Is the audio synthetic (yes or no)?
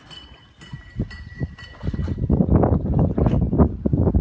no